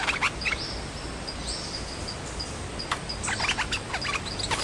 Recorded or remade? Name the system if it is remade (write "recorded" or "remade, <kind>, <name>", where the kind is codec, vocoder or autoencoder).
recorded